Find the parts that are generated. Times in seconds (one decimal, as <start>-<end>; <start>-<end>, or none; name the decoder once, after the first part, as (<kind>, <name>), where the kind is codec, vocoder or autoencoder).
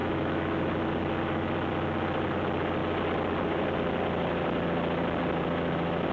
0.0-0.7 (autoencoder, DAC-VAE)